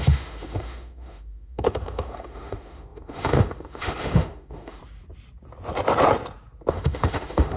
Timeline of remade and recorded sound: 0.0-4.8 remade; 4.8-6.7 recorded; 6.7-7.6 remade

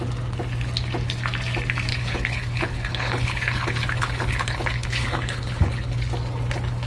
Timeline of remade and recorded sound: 0.0-1.9 recorded; 1.9-6.0 remade; 6.0-6.9 recorded

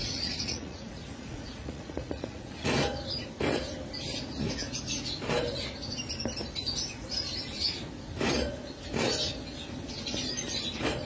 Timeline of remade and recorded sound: 0.0-2.7 remade; 2.7-11.0 recorded